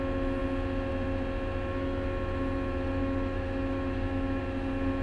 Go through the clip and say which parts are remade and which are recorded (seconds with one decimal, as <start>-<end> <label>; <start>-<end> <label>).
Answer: 0.0-3.0 recorded; 3.0-4.4 remade; 4.4-5.0 recorded